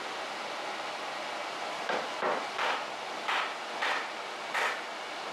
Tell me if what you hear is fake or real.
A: real